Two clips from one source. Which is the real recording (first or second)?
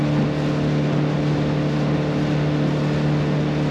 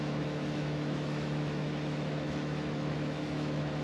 first